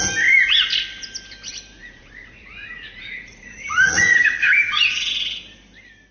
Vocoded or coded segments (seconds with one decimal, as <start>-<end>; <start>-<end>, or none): 1.8-5.1